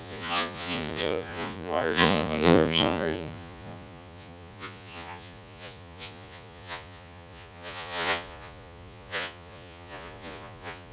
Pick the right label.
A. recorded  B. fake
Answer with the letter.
B